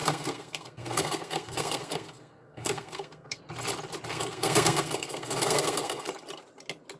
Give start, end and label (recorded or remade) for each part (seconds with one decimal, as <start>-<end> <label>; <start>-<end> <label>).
0.0-3.4 remade; 3.4-4.1 recorded; 4.1-6.1 remade; 6.1-7.0 recorded